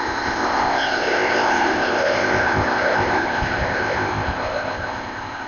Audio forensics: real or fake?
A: fake